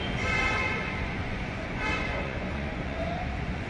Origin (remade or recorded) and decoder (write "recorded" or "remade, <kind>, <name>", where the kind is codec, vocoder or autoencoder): remade, vocoder, Vocos